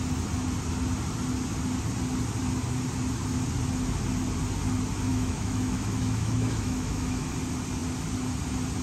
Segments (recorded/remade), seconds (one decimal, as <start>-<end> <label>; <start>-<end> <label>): 0.0-5.1 recorded; 5.1-7.3 remade; 7.3-8.8 recorded